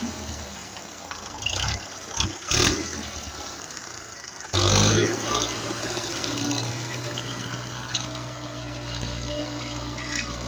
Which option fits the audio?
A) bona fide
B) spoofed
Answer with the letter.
B